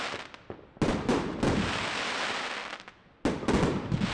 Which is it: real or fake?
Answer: real